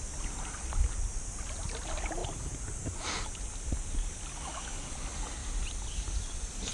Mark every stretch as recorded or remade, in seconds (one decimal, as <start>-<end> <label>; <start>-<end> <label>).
0.0-6.7 recorded